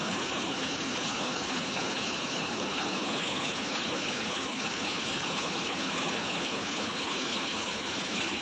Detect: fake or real fake